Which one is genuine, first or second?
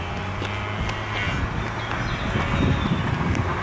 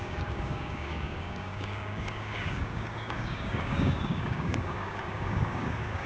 first